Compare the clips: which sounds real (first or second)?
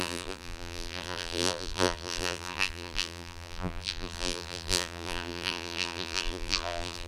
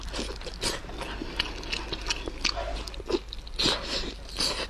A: second